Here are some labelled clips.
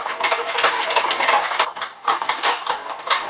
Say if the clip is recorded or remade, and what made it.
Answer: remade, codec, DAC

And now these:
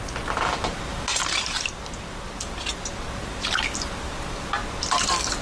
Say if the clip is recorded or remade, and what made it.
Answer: recorded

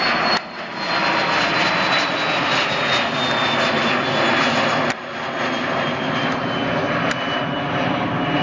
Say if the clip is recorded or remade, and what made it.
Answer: recorded